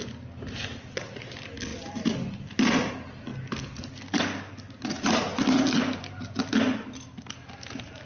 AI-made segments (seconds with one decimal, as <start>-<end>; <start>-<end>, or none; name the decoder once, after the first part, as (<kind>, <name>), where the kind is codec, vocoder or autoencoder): none